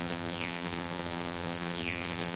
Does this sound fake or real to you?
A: fake